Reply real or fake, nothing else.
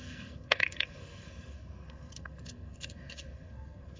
fake